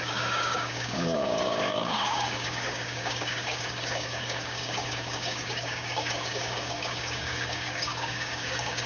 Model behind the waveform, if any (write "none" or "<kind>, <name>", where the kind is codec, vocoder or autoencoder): codec, DAC